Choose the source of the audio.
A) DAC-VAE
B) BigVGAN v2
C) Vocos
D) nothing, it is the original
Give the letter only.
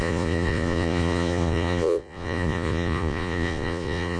C